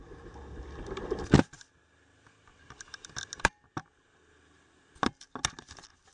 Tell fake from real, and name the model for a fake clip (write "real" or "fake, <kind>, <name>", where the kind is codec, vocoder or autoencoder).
real